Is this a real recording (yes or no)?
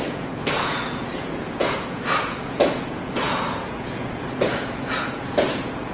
no